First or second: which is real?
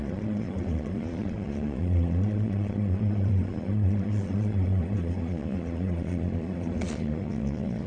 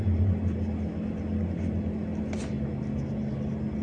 second